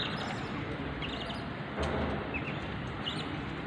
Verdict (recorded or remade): recorded